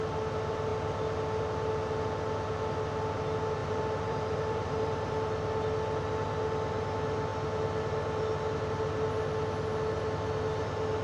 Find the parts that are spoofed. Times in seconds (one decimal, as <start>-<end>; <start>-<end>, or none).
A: 3.6-5.1